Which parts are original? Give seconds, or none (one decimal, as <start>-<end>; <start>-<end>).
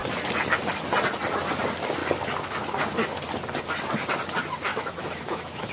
0.0-4.7